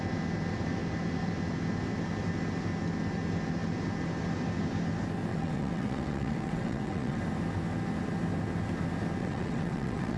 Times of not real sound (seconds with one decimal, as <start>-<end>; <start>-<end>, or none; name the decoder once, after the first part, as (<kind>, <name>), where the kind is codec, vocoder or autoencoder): 5.3-7.2 (vocoder, WaveNeXt); 9.2-10.2